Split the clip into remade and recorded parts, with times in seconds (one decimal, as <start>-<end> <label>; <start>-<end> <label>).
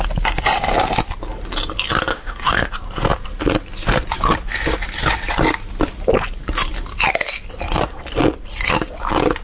0.0-2.1 recorded; 2.1-2.7 remade; 2.7-9.4 recorded